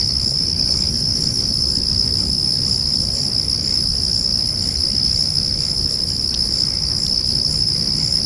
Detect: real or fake fake